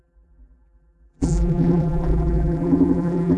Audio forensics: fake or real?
fake